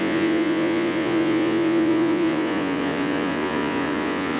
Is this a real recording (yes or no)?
no